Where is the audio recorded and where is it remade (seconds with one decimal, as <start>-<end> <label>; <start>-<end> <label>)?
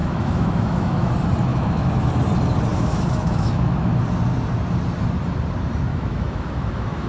0.0-1.1 remade; 1.1-1.5 recorded; 1.5-2.1 remade; 2.1-2.7 recorded; 2.7-3.9 remade; 3.9-5.9 recorded; 5.9-7.1 remade